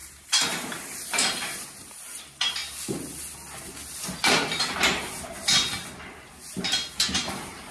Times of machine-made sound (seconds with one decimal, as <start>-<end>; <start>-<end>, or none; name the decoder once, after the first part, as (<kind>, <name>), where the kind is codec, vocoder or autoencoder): 0.0-2.6 (vocoder, BigVGAN v2); 6.9-7.7